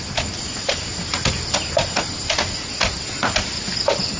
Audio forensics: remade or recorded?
recorded